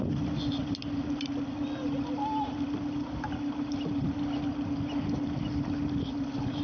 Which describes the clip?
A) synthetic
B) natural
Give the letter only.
B